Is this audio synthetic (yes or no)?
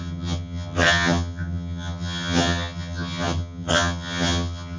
yes